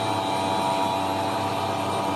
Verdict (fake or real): real